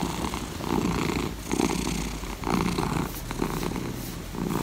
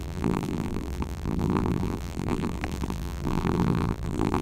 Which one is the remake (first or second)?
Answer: second